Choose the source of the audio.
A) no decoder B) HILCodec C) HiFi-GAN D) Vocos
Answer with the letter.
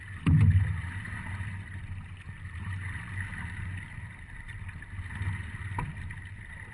A